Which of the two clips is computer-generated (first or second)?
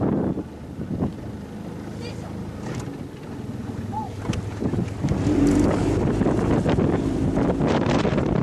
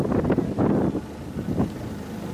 first